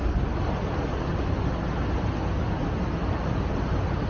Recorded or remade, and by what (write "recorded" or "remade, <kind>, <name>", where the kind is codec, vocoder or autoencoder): recorded